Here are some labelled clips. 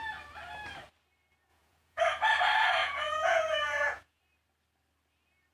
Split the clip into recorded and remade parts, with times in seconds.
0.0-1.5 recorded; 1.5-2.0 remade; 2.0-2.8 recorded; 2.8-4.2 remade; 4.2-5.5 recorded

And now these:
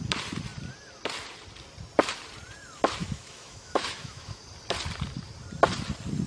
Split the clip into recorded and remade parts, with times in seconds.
0.0-3.0 recorded; 3.0-4.4 remade; 4.4-6.3 recorded

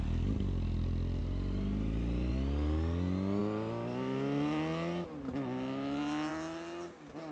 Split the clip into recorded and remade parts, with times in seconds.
0.0-1.2 recorded; 1.2-2.3 remade; 2.3-7.3 recorded